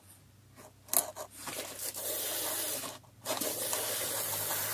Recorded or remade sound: recorded